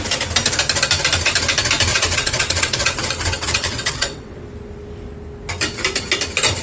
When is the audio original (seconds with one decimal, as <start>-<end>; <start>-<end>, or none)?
0.0-1.9; 4.4-6.6